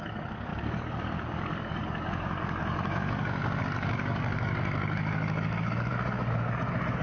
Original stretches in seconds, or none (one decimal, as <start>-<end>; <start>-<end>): none